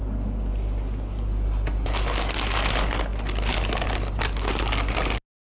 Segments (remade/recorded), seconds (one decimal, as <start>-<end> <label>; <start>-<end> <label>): 0.0-5.5 recorded